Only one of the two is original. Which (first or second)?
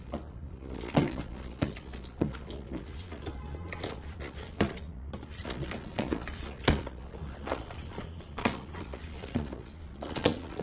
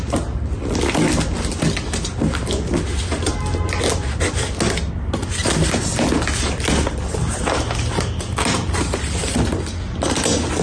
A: second